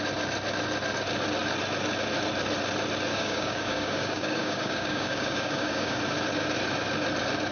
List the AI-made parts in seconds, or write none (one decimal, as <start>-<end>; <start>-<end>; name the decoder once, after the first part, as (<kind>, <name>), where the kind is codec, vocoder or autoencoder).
3.1-6.0 (codec, DAC)